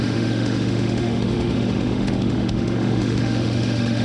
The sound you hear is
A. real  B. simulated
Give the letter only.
B